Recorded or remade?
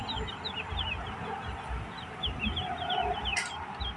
recorded